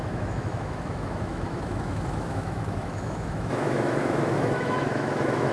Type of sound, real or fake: fake